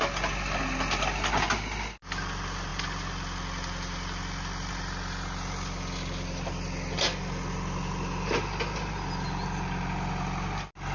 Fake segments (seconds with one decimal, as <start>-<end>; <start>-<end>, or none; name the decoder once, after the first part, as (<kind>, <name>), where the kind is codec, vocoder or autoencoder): none